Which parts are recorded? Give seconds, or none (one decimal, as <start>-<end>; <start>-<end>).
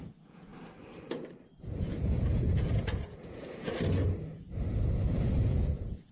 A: 0.5-1.6; 3.7-5.4